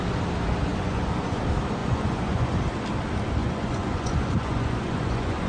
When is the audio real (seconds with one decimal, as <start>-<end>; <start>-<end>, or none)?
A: 0.0-0.7; 1.4-1.8; 2.6-3.4